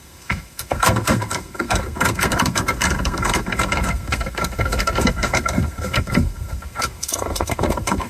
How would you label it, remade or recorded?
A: remade